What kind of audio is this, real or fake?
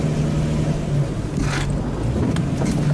real